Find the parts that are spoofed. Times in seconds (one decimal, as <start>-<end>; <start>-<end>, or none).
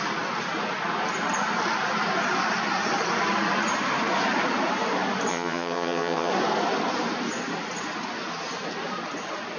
5.3-6.3